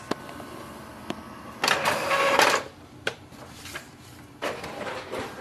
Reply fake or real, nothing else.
fake